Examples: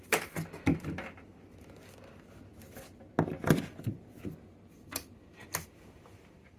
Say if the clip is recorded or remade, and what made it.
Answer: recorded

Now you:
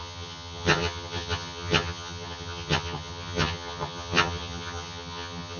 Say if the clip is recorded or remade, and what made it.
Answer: remade, vocoder, HiFi-GAN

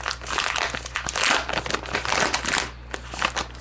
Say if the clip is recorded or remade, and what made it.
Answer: recorded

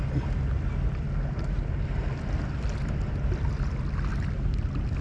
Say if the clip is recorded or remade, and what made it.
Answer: recorded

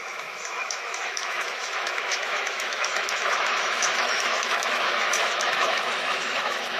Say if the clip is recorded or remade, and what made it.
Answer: remade, autoencoder, DAC-VAE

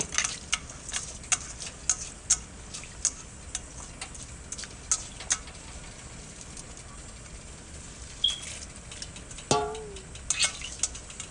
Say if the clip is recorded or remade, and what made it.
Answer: recorded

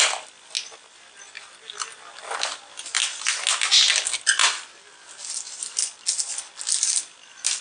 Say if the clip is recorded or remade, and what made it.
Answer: recorded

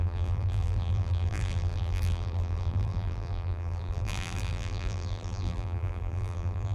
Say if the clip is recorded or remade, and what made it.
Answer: remade, vocoder, BigVGAN v2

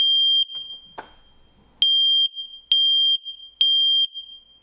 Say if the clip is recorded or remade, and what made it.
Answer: recorded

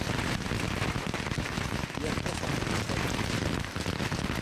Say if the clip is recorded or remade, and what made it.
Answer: recorded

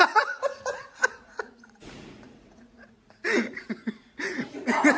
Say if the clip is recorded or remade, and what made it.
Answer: remade, vocoder, Vocos